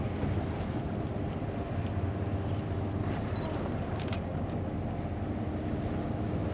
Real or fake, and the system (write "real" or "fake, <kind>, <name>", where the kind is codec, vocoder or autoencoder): real